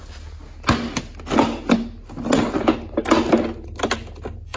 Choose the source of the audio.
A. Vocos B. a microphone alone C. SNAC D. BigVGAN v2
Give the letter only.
B